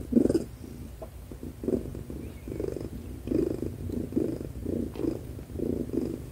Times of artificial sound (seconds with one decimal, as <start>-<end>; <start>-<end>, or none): none